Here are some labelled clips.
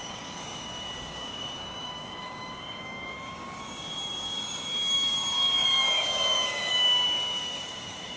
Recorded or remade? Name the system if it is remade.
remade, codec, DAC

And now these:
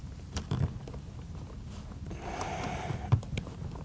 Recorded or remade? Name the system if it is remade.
recorded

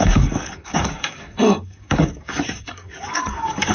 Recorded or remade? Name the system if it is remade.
remade, codec, DAC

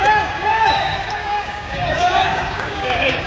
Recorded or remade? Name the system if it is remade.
remade, codec, DAC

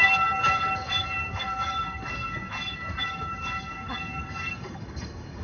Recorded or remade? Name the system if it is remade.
remade, codec, DAC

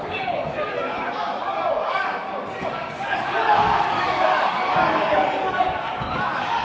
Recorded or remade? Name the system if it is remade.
remade, codec, DAC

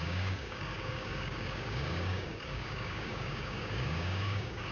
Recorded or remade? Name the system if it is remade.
remade, codec, DAC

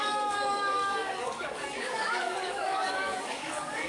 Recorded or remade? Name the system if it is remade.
remade, codec, DAC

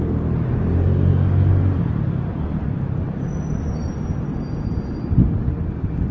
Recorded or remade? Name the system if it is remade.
recorded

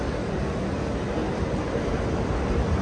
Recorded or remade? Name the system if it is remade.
recorded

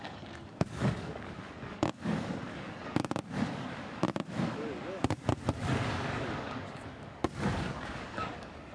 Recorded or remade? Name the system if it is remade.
remade, codec, DAC